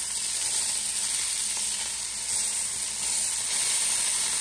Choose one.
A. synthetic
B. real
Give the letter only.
B